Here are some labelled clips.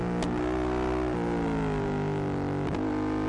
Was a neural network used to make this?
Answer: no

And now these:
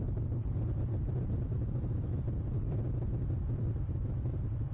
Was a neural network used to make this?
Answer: yes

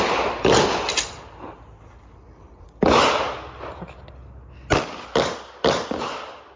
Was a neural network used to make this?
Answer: no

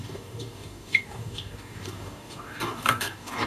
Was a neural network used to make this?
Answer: yes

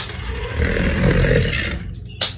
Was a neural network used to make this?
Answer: no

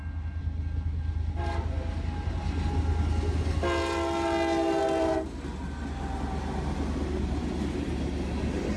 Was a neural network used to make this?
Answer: no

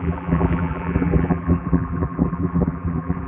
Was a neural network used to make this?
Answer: yes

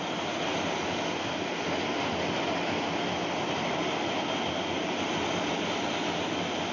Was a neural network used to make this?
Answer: no